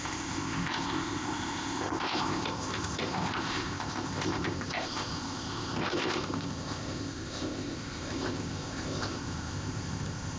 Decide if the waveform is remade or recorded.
remade